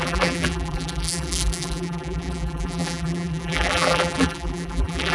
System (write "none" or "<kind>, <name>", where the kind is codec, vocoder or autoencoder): vocoder, BigVGAN v2